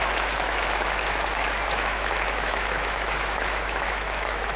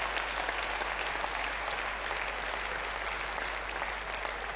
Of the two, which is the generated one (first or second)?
first